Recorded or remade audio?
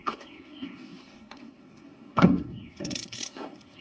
remade